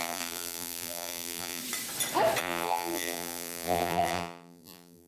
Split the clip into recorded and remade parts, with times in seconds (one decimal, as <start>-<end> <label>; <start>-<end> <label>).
0.0-1.6 remade; 1.6-2.4 recorded; 2.4-5.1 remade